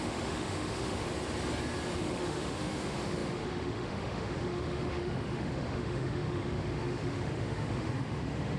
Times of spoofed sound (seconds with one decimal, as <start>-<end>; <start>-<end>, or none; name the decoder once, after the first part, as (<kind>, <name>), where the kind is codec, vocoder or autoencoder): 0.0-1.1 (autoencoder, DAC-VAE); 2.0-8.6